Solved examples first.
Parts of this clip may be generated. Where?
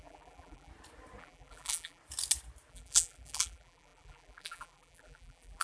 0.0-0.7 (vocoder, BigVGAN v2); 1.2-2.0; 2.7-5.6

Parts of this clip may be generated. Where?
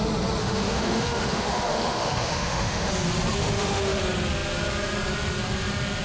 0.4-2.9 (autoencoder, DAC-VAE); 3.4-4.0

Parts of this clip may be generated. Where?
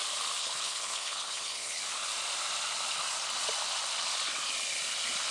0.4-1.8 (codec, HILCodec)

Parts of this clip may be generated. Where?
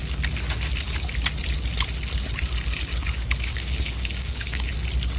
2.9-4.7 (codec, DAC)